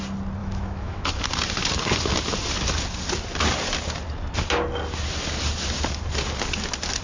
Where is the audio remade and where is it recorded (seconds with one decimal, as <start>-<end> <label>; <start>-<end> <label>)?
0.0-0.4 recorded; 0.4-1.2 remade; 1.2-7.0 recorded